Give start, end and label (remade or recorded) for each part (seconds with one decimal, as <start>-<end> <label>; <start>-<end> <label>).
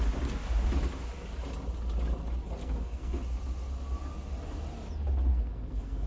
0.0-2.6 recorded; 2.6-3.2 remade; 3.2-5.3 recorded; 5.3-6.1 remade